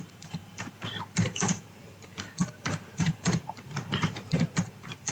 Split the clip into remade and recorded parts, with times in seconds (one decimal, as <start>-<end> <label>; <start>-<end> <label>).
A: 0.0-5.1 remade